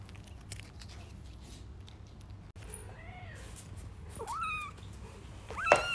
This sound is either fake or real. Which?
real